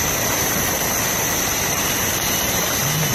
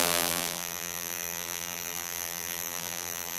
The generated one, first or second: second